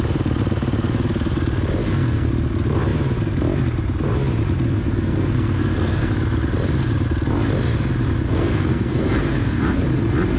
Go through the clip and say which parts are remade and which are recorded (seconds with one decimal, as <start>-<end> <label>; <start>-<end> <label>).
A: 0.0-1.8 recorded; 1.8-2.3 remade; 2.3-4.7 recorded; 4.7-6.1 remade; 6.1-8.3 recorded; 8.3-9.8 remade; 9.8-10.4 recorded